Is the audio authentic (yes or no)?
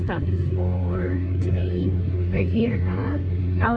no